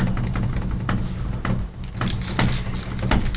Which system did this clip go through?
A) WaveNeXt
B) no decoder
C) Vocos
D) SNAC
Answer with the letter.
B